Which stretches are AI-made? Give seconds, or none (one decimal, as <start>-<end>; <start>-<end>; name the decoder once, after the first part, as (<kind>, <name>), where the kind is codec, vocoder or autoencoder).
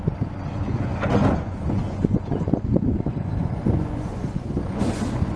0.0-5.4 (vocoder, Vocos)